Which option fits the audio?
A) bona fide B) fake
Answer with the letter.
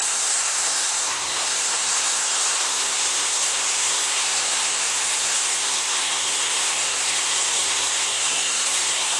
B